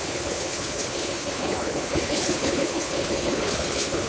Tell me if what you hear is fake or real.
fake